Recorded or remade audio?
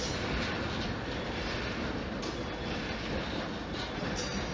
recorded